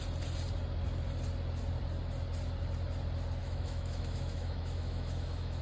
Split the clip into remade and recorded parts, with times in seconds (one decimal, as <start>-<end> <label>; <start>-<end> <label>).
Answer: 0.0-3.4 recorded; 3.4-5.6 remade